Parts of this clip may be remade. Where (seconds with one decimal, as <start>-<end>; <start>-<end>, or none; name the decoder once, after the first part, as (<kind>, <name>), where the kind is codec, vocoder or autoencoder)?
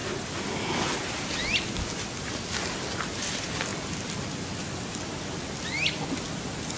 none